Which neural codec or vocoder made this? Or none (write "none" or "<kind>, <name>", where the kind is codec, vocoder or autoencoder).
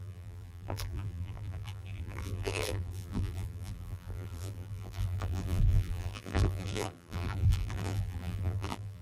vocoder, BigVGAN v2